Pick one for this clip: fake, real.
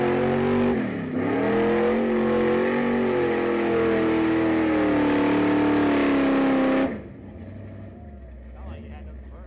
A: real